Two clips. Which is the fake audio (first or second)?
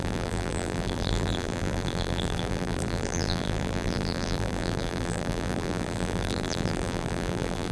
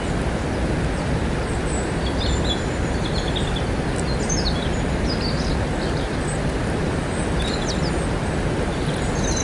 first